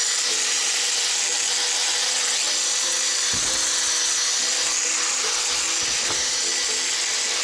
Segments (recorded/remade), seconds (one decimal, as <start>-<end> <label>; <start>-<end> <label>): 0.0-7.4 recorded